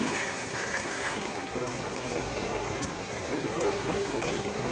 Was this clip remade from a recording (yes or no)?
yes